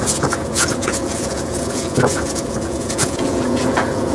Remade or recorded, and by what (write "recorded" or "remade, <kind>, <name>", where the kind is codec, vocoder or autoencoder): remade, vocoder, Vocos